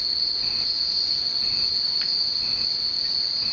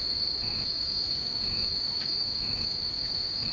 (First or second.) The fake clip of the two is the second